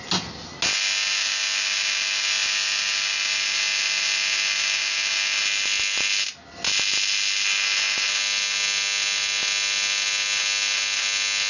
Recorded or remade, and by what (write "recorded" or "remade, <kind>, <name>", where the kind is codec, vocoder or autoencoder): recorded